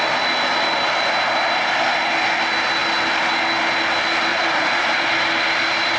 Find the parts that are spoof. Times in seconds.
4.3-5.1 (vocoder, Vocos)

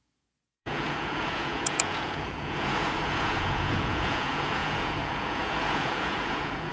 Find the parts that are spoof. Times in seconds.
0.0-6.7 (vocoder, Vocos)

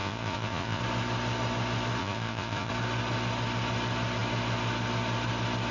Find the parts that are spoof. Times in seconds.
0.0-0.8 (vocoder, Vocos); 2.0-2.7

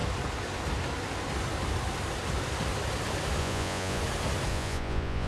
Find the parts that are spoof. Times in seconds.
3.4-4.0 (vocoder, Vocos); 4.5-5.3

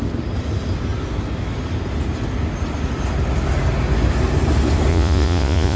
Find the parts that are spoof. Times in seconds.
4.9-5.8 (vocoder, Vocos)

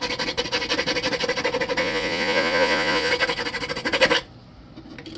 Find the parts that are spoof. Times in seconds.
1.8-3.1 (vocoder, Vocos)

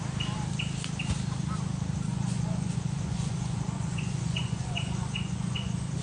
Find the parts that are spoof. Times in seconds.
2.1-6.0 (vocoder, Vocos)

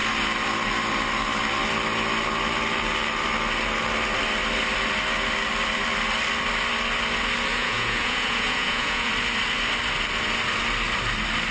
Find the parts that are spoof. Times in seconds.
7.5-9.1 (vocoder, Vocos)